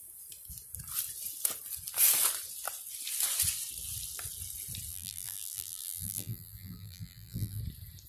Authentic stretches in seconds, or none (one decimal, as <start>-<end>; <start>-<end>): 0.0-4.9; 7.6-8.1